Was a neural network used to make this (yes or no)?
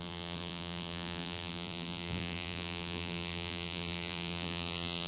yes